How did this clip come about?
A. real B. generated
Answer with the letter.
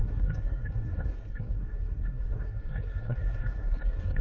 B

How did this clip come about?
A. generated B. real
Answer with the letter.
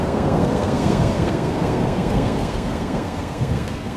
A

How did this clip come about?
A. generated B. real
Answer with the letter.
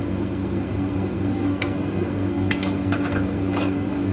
A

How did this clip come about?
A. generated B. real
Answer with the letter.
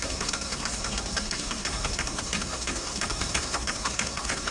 A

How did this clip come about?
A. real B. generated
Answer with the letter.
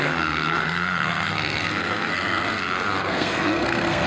B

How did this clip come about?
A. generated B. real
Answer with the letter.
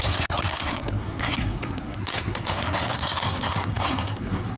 A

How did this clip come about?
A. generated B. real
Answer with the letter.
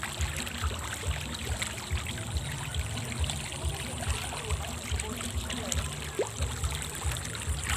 B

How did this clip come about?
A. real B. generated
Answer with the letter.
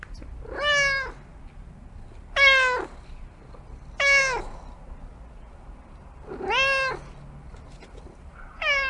A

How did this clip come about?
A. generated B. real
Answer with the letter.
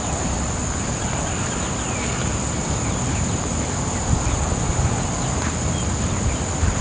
B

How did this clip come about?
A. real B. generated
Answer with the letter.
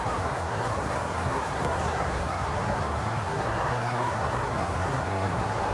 B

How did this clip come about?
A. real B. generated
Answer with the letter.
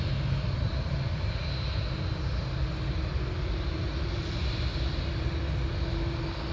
A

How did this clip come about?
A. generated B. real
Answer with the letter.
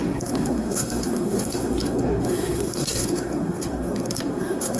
A